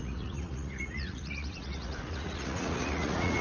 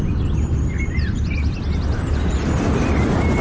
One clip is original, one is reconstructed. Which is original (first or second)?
second